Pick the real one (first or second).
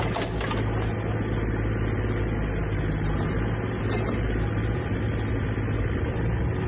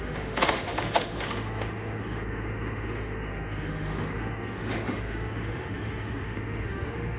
first